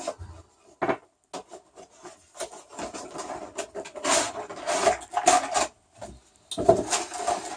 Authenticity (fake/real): real